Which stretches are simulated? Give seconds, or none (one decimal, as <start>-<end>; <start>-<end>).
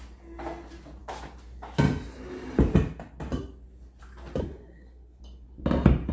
4.4-5.2